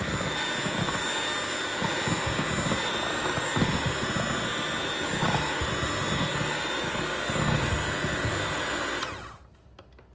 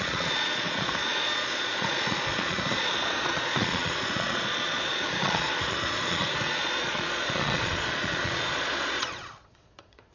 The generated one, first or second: second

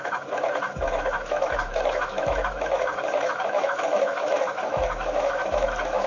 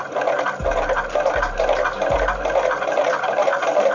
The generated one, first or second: first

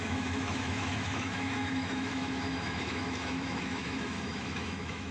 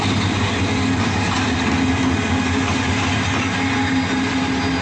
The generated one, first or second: first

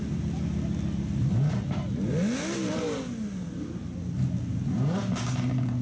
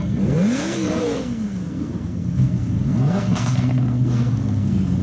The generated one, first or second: second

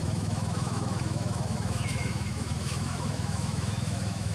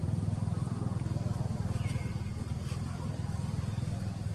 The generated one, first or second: first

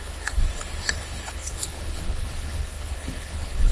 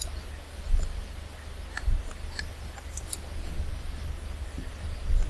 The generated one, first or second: first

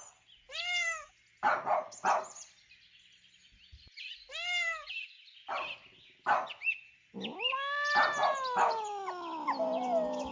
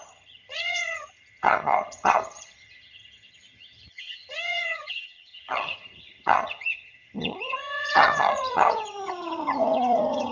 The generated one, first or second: second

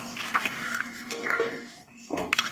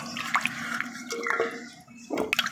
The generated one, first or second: first